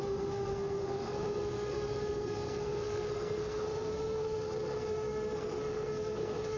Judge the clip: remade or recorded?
remade